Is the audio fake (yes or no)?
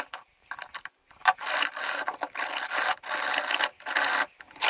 yes